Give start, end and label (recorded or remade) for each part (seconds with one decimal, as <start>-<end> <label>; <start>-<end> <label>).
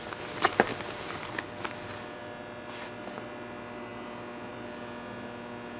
0.0-5.8 recorded